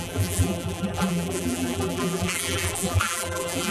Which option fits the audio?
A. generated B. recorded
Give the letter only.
A